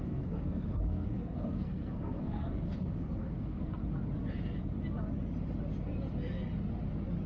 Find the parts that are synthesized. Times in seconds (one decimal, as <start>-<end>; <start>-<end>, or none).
0.0-3.8